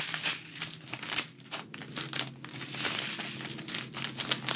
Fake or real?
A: real